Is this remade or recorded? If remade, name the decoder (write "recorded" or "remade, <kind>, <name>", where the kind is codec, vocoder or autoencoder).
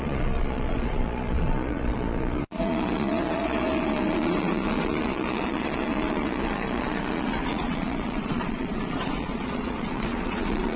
remade, vocoder, Vocos